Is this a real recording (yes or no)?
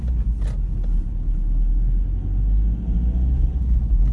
yes